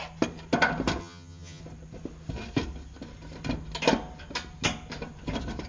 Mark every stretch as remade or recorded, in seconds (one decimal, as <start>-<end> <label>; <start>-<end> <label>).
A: 0.0-1.0 recorded; 1.0-1.6 remade; 1.6-5.7 recorded